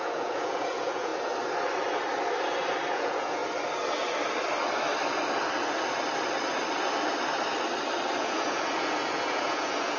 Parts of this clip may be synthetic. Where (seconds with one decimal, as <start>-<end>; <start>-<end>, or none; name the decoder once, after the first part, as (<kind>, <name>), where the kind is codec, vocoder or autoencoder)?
0.0-1.1 (vocoder, Vocos); 2.9-3.4; 8.2-10.0